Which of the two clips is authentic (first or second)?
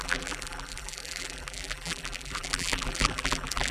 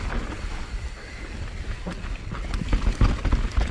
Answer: second